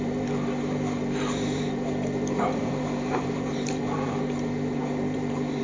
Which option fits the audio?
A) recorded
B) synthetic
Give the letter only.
B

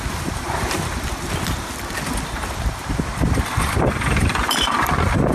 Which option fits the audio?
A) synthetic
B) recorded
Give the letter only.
A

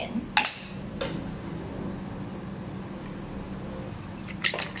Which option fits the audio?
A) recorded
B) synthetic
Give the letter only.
A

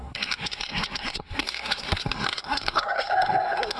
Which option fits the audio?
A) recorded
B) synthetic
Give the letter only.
B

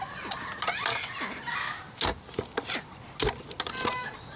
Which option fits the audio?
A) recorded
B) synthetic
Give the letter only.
A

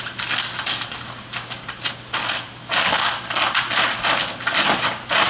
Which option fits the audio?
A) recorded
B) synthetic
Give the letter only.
A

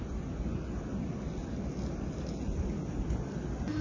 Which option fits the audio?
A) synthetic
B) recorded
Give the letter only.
B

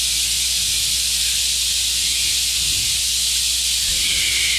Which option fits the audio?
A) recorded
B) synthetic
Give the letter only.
A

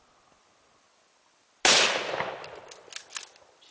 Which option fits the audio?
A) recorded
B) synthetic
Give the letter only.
A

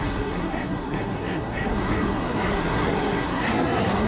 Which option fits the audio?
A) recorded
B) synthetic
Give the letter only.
B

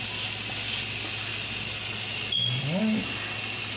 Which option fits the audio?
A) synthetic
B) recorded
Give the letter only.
B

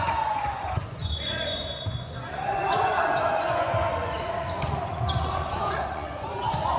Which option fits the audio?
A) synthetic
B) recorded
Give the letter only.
A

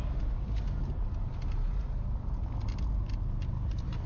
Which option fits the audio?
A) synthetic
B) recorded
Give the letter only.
B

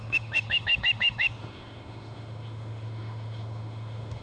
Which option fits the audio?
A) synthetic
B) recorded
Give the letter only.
A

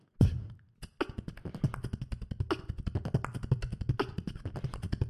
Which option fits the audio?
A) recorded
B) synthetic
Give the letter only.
A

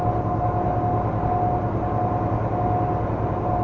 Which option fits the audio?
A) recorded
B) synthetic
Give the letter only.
A